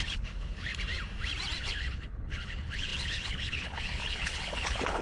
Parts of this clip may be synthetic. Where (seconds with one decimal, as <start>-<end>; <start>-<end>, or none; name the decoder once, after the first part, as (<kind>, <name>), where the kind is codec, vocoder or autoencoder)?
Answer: 0.0-0.7 (codec, HILCodec); 1.6-5.0